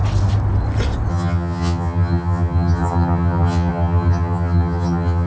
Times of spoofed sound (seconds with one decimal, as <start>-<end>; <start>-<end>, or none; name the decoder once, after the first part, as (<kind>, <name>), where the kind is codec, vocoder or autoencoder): 1.1-5.3 (vocoder, HiFi-GAN)